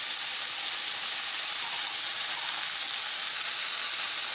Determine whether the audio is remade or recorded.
recorded